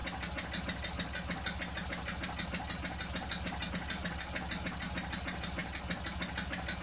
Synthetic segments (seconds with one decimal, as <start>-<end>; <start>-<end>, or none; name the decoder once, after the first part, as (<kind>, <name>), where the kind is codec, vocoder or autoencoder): none